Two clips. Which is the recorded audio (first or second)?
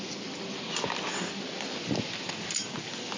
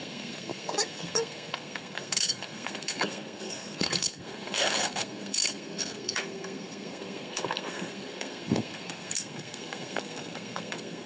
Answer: first